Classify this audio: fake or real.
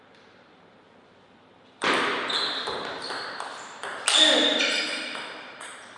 fake